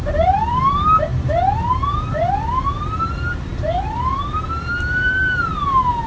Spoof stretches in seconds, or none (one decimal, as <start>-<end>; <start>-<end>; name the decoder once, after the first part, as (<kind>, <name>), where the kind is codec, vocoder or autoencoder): none